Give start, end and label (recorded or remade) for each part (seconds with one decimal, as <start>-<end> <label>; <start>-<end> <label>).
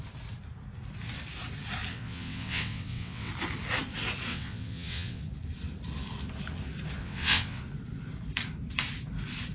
0.0-1.9 recorded; 1.9-3.3 remade; 3.3-4.3 recorded; 4.3-5.2 remade; 5.2-7.0 recorded; 7.0-7.6 remade; 7.6-9.5 recorded